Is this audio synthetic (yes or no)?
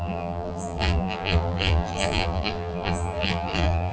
yes